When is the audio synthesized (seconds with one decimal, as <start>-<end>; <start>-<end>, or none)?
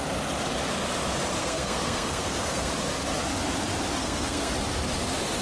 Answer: 1.4-2.7; 4.0-4.5